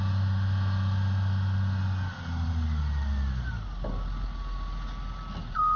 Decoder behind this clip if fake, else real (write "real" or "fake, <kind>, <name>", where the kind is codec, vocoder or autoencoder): real